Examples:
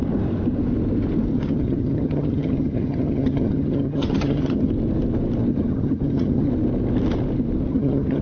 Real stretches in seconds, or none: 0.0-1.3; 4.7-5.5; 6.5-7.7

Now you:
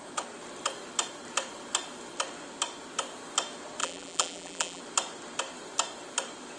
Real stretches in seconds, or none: 0.0-3.8; 4.8-6.6

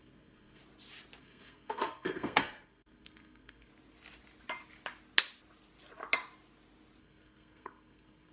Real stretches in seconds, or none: 0.6-1.2; 3.7-7.0

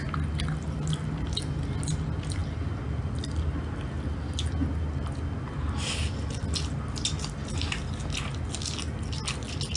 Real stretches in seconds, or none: 0.0-9.8

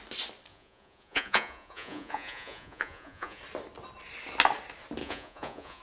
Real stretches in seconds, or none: 0.0-0.5; 3.4-5.0